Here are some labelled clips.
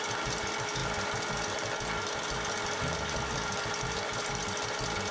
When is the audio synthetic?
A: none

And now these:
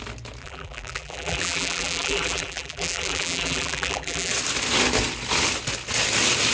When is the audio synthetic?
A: 0.4-4.3 (vocoder, BigVGAN v2)